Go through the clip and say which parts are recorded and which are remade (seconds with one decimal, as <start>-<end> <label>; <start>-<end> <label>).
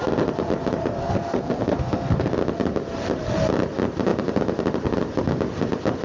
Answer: 0.0-1.0 recorded; 1.0-2.3 remade; 2.3-6.0 recorded